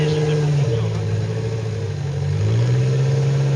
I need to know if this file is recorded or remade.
recorded